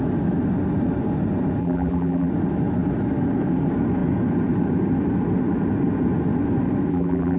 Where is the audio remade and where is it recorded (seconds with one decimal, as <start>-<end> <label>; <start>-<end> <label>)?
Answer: 0.0-1.6 recorded; 1.6-2.3 remade; 2.3-6.9 recorded; 6.9-7.4 remade